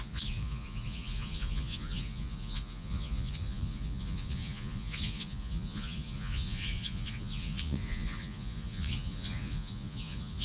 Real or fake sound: fake